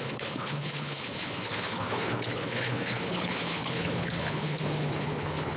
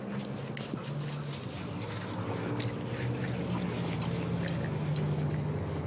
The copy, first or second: first